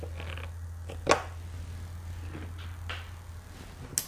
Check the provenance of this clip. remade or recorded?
recorded